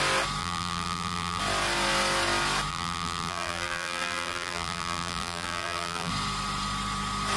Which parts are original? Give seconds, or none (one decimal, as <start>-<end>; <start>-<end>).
0.0-0.4; 1.4-2.7; 6.1-7.4